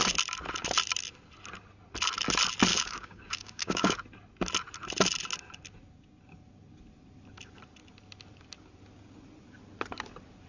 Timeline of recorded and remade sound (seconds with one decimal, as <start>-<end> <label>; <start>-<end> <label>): 0.0-2.7 recorded; 2.7-3.9 remade; 3.9-10.5 recorded